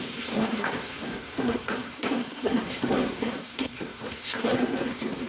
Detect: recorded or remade remade